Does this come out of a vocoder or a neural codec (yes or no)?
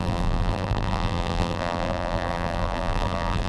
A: yes